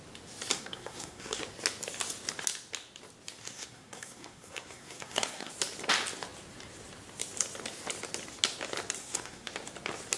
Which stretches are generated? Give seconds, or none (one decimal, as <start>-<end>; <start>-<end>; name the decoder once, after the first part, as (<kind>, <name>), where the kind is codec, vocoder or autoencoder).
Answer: 0.5-1.4 (codec, SNAC); 3.4-5.5; 9.0-9.5